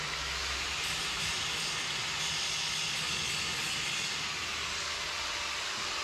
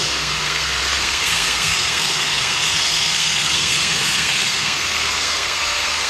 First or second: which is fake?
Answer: second